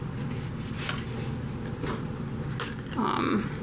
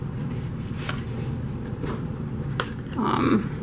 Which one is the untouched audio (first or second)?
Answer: first